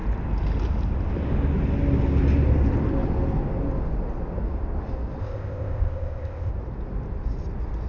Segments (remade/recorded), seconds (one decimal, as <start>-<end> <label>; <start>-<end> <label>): 0.0-5.2 recorded; 5.2-6.5 remade; 6.5-7.9 recorded